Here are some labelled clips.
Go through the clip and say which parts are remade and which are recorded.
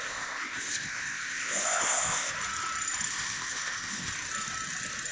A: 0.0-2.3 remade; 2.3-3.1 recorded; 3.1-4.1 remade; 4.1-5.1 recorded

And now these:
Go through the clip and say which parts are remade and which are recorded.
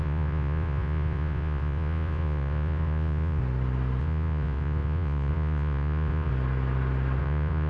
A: 0.0-3.4 remade; 3.4-4.0 recorded; 4.0-6.3 remade; 6.3-7.2 recorded; 7.2-7.7 remade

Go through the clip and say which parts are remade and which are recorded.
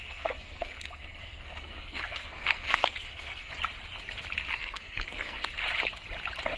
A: 0.0-3.5 remade; 3.5-4.5 recorded; 4.5-5.6 remade; 5.6-6.6 recorded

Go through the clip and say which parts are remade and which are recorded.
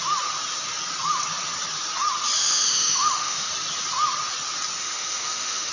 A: 0.0-2.4 recorded; 2.4-3.5 remade; 3.5-4.8 recorded; 4.8-5.7 remade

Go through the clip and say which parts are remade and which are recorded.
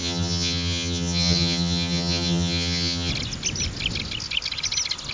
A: 0.0-3.1 remade; 3.1-5.1 recorded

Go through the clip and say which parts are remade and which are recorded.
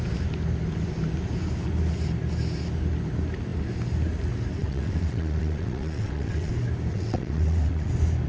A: 0.0-4.6 recorded; 4.6-6.5 remade; 6.5-6.9 recorded; 6.9-7.9 remade; 7.9-8.3 recorded